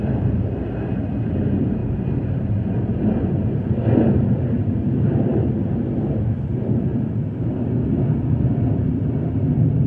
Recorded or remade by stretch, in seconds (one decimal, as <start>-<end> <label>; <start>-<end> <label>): 0.0-1.8 remade; 1.8-3.0 recorded; 3.0-9.9 remade